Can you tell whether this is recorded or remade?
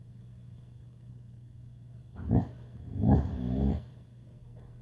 remade